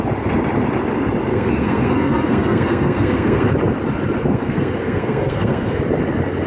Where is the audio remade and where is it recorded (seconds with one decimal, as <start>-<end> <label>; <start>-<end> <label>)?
0.0-1.3 recorded; 1.3-3.5 remade; 3.5-4.3 recorded; 4.3-5.8 remade; 5.8-6.5 recorded